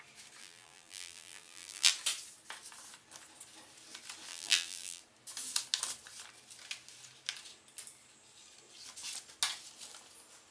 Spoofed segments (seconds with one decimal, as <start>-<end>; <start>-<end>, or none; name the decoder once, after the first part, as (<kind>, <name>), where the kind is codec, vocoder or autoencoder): 0.4-1.9 (vocoder, BigVGAN v2); 4.3-5.0